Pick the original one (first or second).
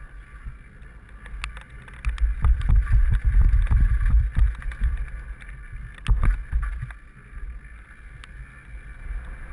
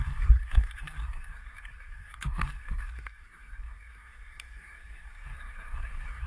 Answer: first